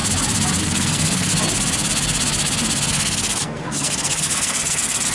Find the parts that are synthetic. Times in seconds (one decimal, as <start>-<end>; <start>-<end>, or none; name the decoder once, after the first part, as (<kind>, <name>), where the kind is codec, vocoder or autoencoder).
0.6-1.3 (codec, SNAC); 2.9-5.1